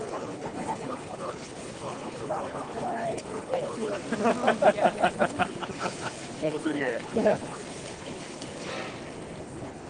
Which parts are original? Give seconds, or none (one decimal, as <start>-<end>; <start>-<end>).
4.0-5.1; 8.7-9.4